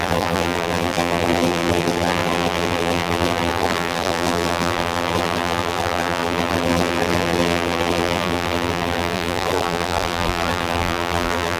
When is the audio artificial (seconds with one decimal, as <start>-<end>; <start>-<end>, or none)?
0.0-11.6